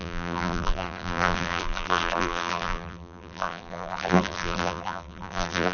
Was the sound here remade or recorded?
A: remade